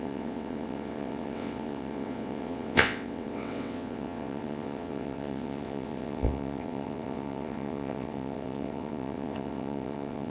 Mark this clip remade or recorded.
remade